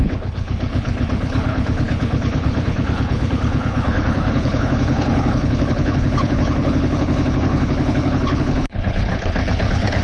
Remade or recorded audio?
remade